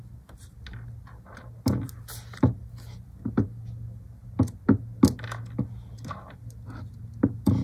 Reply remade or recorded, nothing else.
recorded